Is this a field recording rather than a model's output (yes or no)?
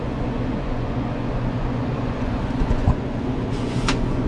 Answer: no